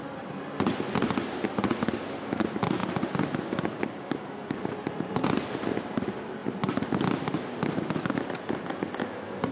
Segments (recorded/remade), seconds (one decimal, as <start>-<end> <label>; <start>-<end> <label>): 0.0-9.5 recorded